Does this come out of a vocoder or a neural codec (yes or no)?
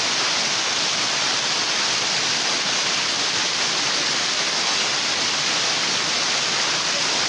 no